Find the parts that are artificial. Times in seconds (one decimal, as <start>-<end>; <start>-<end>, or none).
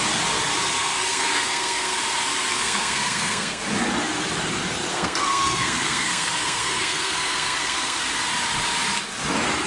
0.8-2.0; 2.5-3.6; 4.9-8.2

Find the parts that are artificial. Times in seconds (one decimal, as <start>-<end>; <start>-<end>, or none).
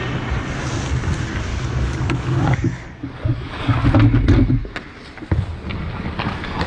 1.5-3.6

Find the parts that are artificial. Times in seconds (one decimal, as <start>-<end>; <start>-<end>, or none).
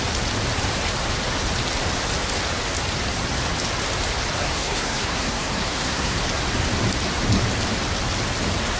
4.4-6.2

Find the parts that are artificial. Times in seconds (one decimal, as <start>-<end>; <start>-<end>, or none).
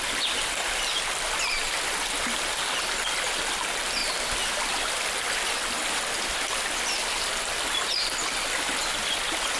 4.0-7.3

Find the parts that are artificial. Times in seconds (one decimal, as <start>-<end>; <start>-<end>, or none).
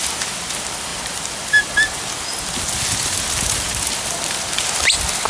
none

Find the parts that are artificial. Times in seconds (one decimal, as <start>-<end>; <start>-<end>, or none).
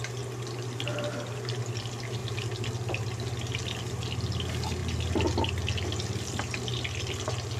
none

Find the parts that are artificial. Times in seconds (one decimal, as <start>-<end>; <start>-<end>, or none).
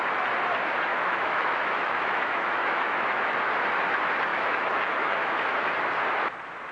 0.9-3.4; 4.3-5.7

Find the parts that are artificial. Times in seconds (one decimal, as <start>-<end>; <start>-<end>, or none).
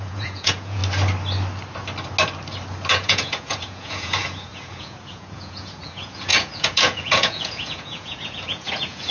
0.0-0.8; 2.9-9.1